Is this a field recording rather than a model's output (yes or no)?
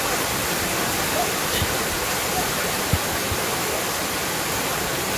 yes